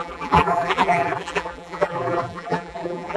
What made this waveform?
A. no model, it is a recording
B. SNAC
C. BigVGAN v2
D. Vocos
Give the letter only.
C